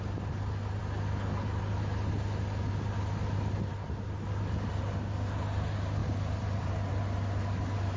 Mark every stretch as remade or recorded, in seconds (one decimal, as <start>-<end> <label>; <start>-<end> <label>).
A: 0.0-6.0 recorded; 6.0-6.9 remade; 6.9-8.0 recorded